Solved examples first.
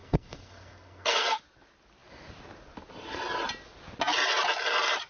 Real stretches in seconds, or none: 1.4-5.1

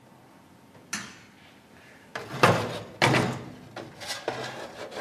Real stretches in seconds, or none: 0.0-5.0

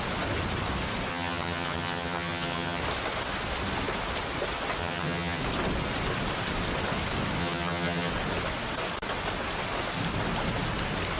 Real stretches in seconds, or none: 0.0-1.1; 2.8-4.8; 5.4-7.4; 8.1-11.2